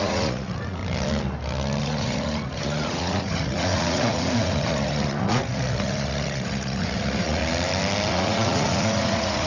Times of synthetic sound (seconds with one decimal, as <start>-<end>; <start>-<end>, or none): 0.0-0.8; 1.8-7.4; 8.1-9.5